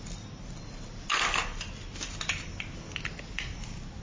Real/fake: real